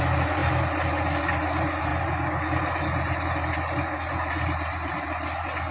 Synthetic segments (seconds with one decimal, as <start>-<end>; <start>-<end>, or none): none